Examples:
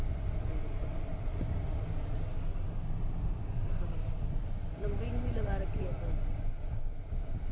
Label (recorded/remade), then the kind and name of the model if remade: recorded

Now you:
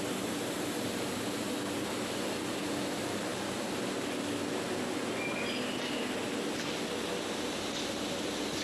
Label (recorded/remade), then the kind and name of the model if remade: recorded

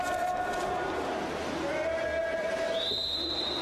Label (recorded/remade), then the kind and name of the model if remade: recorded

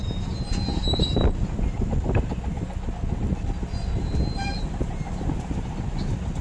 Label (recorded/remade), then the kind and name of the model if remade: recorded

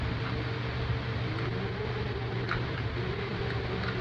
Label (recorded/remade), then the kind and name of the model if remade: recorded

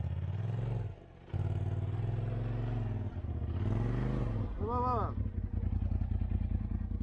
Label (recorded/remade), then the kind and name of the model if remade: recorded